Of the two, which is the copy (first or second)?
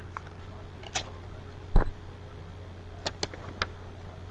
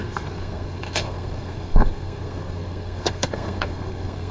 second